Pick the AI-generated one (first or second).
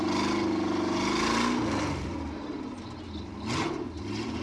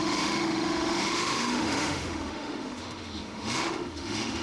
second